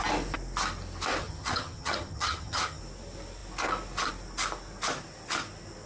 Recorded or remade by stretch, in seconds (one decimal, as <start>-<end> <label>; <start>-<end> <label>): 0.0-1.2 recorded; 1.2-2.8 remade; 2.8-5.9 recorded